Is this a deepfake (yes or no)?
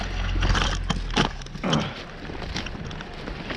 no